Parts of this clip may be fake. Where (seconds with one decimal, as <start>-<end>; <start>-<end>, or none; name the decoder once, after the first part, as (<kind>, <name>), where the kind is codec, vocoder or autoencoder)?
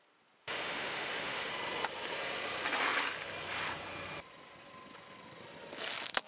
0.4-1.5 (autoencoder, DAC-VAE)